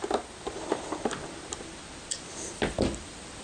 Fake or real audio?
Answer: fake